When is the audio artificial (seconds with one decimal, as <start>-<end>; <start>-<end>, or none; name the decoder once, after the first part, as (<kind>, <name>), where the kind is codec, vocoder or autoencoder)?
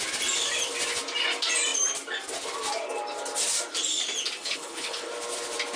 4.4-5.1 (codec, HILCodec)